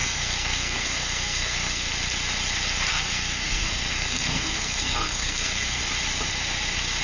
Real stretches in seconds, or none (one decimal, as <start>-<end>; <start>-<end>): 1.9-2.9; 5.8-7.0